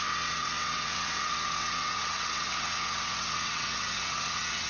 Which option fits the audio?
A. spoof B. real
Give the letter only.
A